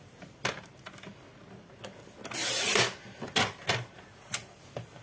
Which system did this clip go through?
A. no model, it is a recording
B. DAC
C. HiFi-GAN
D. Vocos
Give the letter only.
A